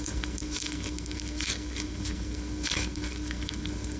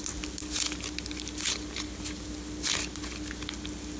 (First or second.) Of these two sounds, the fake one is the first